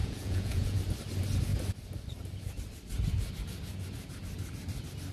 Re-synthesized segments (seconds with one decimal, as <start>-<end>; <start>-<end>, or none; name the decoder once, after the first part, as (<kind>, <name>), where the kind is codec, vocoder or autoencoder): 0.0-0.8 (vocoder, Vocos)